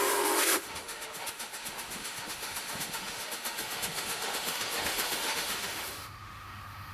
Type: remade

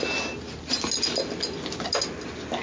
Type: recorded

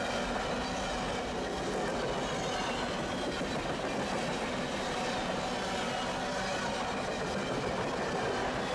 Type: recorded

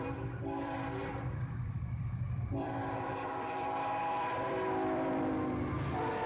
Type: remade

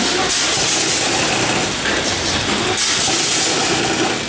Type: recorded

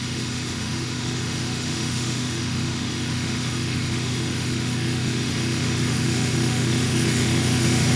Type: remade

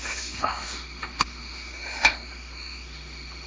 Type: remade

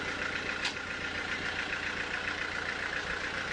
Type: recorded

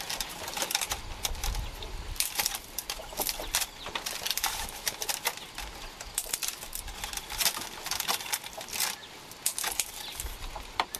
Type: recorded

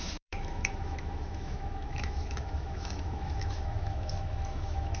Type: remade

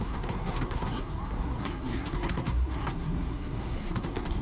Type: remade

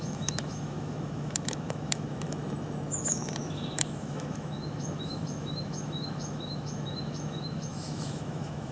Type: remade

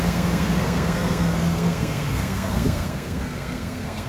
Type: remade